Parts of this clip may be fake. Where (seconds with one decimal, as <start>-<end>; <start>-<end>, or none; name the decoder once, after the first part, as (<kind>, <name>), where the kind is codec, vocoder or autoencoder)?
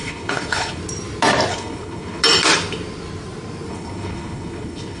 0.0-0.8 (codec, HILCodec); 1.5-2.2; 3.7-5.0